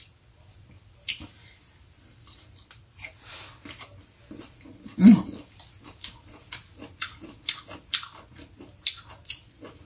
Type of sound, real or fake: real